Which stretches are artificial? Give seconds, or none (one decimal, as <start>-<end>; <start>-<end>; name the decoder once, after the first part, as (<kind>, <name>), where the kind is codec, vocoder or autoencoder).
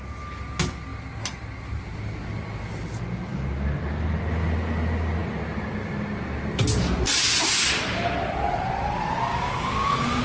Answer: 9.3-10.2 (codec, DAC)